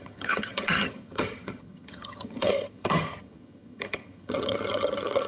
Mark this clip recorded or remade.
remade